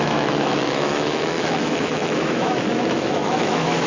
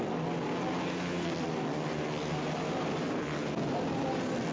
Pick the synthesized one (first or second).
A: first